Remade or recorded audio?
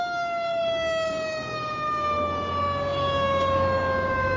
remade